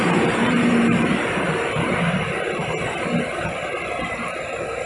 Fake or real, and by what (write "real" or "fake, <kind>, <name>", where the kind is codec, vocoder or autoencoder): fake, vocoder, BigVGAN v2